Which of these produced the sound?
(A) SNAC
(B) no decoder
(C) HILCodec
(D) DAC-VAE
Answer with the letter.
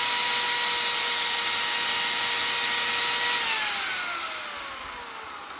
B